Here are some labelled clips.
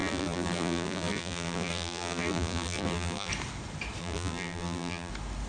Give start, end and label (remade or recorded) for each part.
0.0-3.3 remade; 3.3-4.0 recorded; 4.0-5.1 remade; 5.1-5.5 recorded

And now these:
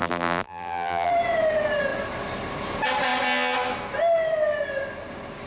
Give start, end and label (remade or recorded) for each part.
0.0-1.1 remade; 1.1-5.5 recorded

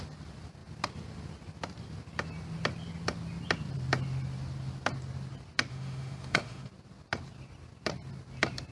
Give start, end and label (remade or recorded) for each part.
0.0-5.7 recorded; 5.7-6.7 remade; 6.7-8.7 recorded

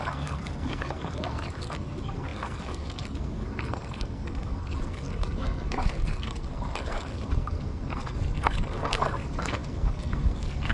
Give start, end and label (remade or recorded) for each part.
0.0-10.7 remade

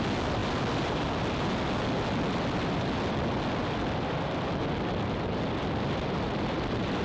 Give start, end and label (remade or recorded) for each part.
0.0-7.0 recorded

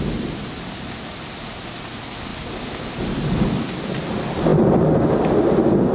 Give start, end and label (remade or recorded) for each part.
0.0-5.9 recorded

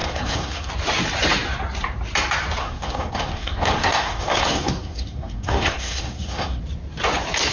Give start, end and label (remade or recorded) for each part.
0.0-0.7 remade; 0.7-2.6 recorded; 2.6-6.6 remade; 6.6-7.5 recorded